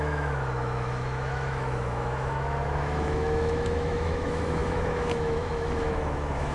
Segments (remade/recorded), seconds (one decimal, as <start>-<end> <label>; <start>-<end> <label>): 0.0-6.5 remade